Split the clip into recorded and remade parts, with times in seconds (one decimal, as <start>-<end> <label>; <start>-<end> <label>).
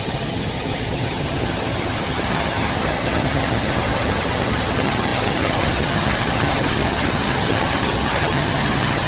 0.0-9.1 remade